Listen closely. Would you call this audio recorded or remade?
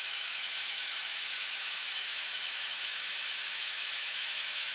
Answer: remade